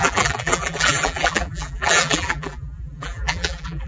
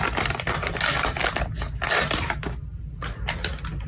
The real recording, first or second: second